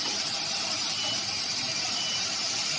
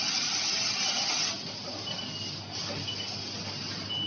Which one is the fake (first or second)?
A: first